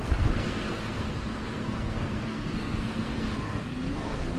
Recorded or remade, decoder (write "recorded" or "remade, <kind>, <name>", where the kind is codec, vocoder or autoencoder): remade, codec, SNAC